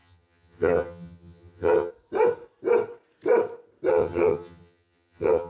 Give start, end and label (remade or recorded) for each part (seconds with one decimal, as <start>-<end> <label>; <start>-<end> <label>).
0.0-1.9 remade; 1.9-3.9 recorded; 3.9-5.5 remade